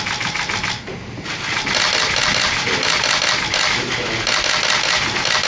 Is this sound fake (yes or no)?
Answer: no